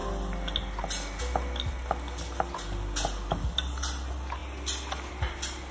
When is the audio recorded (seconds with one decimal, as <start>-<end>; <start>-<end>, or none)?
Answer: 0.0-5.7